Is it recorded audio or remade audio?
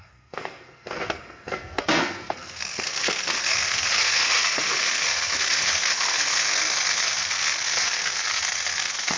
remade